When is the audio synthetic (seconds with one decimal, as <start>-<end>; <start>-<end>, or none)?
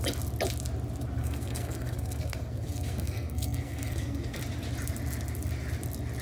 1.2-4.4